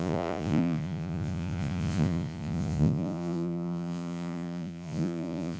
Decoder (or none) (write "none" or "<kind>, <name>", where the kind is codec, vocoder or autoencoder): vocoder, Vocos